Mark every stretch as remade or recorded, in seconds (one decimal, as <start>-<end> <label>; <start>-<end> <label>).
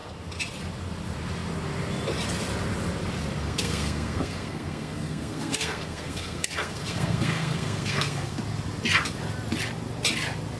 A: 0.0-3.4 recorded; 3.4-8.4 remade; 8.4-10.6 recorded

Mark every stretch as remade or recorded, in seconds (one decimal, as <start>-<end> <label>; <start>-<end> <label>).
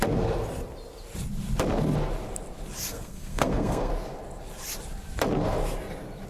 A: 0.0-2.9 recorded; 2.9-3.9 remade; 3.9-6.3 recorded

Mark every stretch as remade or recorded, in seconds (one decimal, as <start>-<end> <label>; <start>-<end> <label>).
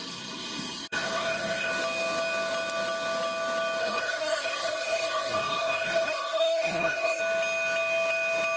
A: 0.0-1.7 remade; 1.7-3.8 recorded; 3.8-7.2 remade; 7.2-8.6 recorded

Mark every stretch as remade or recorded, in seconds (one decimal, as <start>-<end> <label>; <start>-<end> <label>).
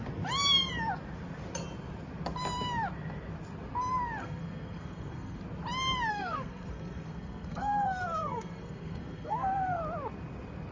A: 0.0-4.2 recorded; 4.2-5.4 remade; 5.4-6.1 recorded; 6.1-9.8 remade; 9.8-10.7 recorded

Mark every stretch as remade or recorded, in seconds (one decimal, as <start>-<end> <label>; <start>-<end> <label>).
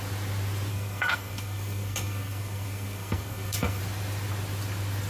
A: 0.0-0.7 recorded; 0.7-3.8 remade; 3.8-5.1 recorded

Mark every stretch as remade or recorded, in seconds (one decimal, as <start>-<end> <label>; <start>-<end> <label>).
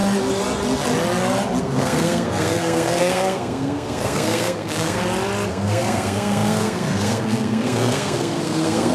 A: 0.0-1.6 recorded; 1.6-5.0 remade; 5.0-5.5 recorded; 5.5-8.9 remade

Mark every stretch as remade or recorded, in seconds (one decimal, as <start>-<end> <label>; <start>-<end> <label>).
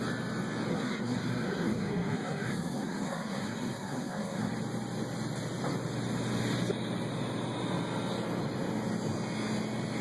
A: 0.0-0.7 recorded; 0.7-4.5 remade; 4.5-10.0 recorded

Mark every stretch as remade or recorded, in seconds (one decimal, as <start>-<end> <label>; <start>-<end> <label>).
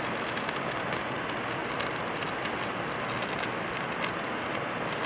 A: 0.0-5.1 recorded